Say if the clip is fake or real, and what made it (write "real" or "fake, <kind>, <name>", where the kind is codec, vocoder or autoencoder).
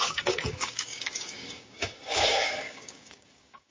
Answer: fake, codec, DAC